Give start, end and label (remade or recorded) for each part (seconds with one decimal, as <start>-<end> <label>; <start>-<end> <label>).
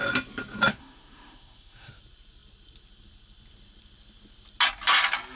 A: 0.0-0.7 recorded; 0.7-2.0 remade; 2.0-5.4 recorded